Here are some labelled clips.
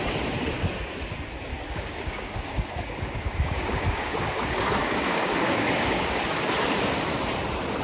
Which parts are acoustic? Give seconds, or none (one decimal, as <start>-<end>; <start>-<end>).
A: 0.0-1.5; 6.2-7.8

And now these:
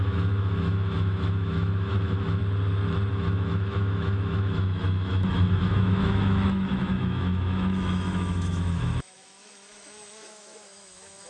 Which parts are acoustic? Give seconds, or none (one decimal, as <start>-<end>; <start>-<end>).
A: 2.4-3.1

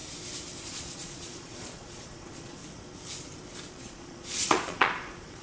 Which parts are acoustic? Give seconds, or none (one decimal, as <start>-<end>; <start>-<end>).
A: 0.0-0.6; 2.6-3.7

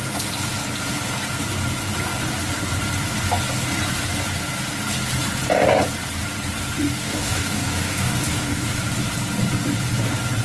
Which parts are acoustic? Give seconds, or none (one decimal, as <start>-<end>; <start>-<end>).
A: 0.0-7.0; 8.7-10.4

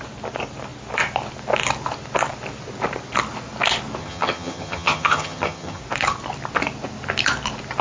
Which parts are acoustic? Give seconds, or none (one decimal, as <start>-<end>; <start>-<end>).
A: 0.0-4.0; 5.8-7.8